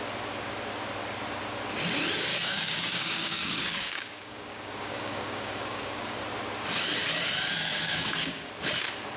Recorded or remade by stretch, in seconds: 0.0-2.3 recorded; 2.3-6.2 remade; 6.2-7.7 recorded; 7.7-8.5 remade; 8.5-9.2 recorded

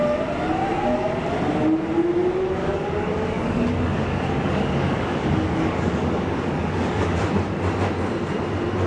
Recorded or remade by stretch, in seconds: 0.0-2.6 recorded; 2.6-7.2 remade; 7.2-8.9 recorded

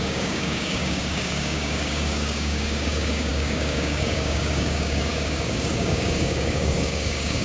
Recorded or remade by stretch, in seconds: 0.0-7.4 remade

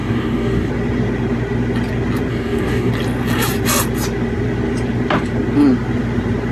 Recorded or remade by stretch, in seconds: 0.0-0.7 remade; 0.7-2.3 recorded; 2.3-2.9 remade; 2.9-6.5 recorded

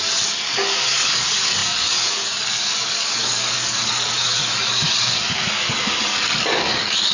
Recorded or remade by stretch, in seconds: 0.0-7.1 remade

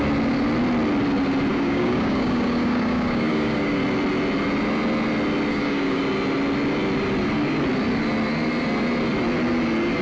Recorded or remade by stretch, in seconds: 0.0-1.5 recorded; 1.5-3.8 remade; 3.8-5.5 recorded; 5.5-6.0 remade; 6.0-10.0 recorded

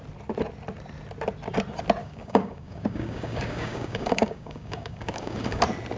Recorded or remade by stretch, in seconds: 0.0-2.0 recorded; 2.0-5.6 remade; 5.6-6.0 recorded

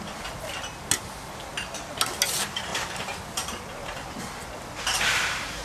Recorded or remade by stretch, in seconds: 0.0-5.6 recorded